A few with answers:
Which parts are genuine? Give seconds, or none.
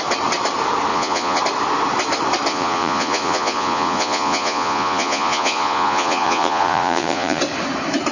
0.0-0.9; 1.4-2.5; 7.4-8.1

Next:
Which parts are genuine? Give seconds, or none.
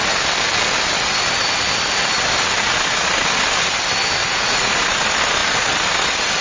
0.0-4.2; 4.7-6.4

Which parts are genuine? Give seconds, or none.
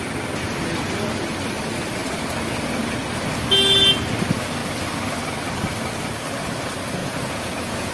0.0-7.0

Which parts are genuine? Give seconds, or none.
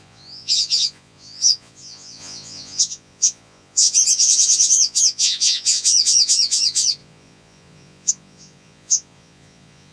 none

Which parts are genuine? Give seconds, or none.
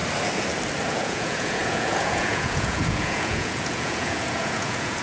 0.0-0.9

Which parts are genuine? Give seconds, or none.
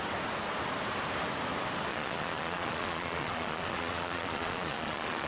0.0-1.9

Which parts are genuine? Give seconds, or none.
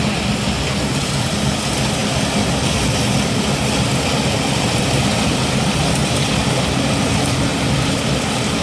0.0-8.6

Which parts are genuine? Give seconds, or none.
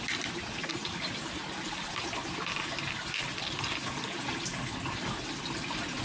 0.0-6.0